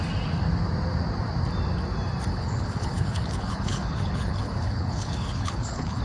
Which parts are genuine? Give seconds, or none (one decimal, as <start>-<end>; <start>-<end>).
0.0-2.3